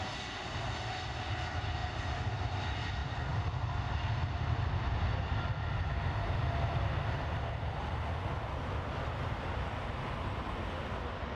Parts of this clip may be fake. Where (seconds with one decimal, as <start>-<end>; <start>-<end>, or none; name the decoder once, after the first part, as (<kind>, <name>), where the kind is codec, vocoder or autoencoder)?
none

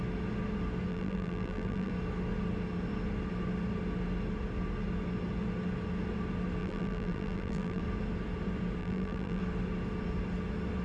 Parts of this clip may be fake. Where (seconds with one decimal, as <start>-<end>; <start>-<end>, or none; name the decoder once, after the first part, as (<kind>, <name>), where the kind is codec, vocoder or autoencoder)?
0.9-1.9 (vocoder, BigVGAN v2); 6.6-7.8; 8.8-9.4